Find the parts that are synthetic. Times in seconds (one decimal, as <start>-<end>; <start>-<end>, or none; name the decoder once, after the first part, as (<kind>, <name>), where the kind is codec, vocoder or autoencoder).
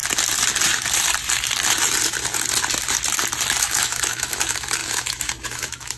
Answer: 3.6-6.0 (autoencoder, DAC-VAE)